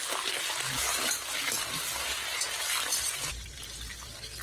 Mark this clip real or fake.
fake